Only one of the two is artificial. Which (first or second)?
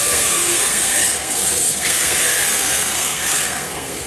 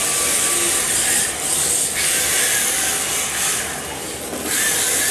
first